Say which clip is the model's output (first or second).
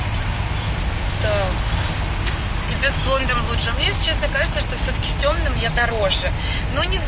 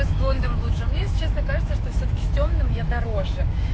second